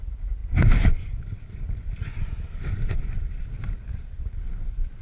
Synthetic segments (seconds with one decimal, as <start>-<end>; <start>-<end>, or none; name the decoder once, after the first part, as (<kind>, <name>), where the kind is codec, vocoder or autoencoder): none